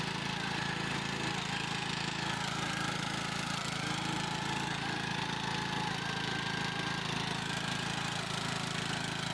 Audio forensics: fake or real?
real